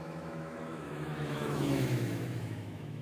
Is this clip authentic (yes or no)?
no